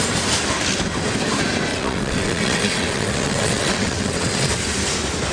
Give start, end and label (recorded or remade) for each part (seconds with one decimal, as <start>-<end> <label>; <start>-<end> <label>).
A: 0.0-1.7 recorded; 1.7-4.5 remade; 4.5-5.3 recorded